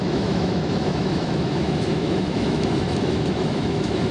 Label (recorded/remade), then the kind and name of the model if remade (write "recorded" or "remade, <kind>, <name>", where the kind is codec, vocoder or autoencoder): remade, autoencoder, DAC-VAE